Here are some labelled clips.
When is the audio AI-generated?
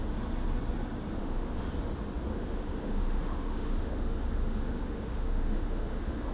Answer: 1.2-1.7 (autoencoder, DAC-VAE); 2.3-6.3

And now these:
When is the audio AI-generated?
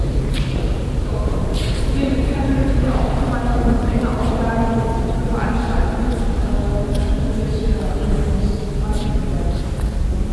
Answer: 1.3-4.5 (vocoder, BigVGAN v2); 6.4-9.1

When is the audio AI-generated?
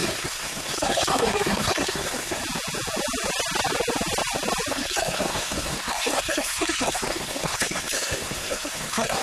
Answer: 0.0-2.4 (codec, SNAC); 4.7-9.2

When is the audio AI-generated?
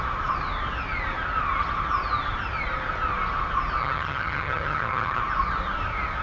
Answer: 3.8-5.2 (vocoder, HiFi-GAN)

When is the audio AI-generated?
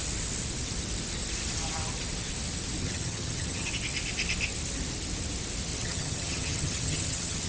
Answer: 2.8-3.7 (vocoder, HiFi-GAN); 5.7-7.5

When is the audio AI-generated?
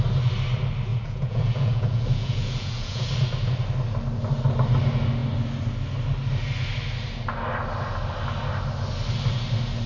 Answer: 0.9-3.1 (vocoder, Vocos)